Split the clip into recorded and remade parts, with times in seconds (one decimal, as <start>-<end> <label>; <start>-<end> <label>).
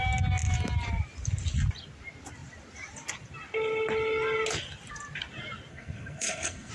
0.0-5.7 recorded; 5.7-6.7 remade